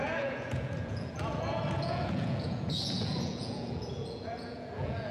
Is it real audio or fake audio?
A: fake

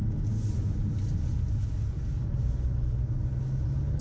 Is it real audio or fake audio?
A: real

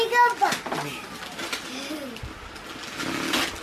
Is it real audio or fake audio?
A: real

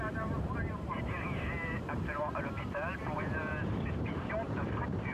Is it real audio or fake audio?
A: fake